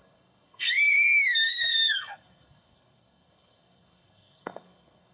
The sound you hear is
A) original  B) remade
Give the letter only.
B